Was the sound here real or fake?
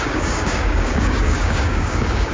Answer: fake